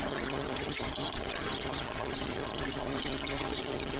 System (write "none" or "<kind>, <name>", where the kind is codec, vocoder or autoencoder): vocoder, HiFi-GAN